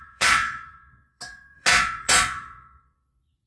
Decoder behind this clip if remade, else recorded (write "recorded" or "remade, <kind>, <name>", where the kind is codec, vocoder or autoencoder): remade, vocoder, Vocos